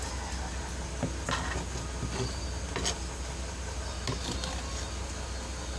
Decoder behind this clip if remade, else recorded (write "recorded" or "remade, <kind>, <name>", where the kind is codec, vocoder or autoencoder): recorded